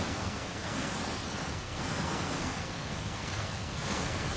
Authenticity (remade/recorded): remade